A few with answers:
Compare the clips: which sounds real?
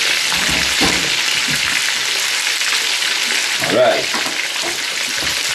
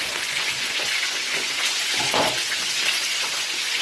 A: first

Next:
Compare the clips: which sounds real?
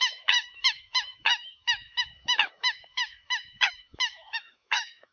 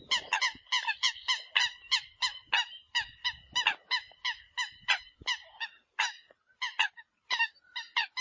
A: second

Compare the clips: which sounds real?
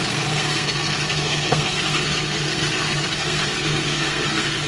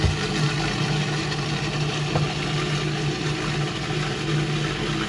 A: second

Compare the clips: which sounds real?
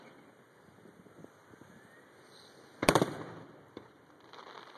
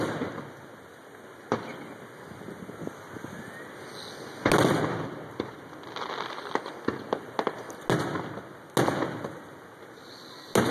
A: second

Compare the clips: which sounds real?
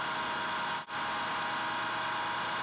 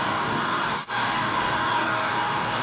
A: first